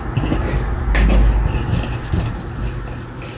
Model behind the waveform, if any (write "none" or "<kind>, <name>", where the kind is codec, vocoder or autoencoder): none